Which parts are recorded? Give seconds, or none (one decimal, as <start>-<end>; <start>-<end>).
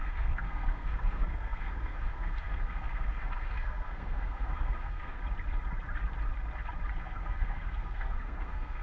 5.2-7.0